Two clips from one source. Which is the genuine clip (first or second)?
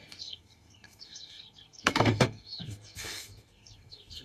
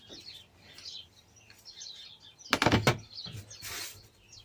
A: second